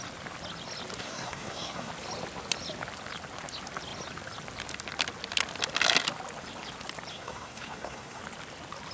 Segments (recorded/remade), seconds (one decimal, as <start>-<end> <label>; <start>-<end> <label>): 0.0-1.0 recorded; 1.0-1.9 remade; 1.9-7.1 recorded; 7.1-8.2 remade; 8.2-8.9 recorded